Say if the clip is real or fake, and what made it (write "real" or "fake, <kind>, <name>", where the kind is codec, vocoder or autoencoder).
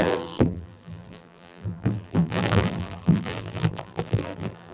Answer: fake, vocoder, BigVGAN v2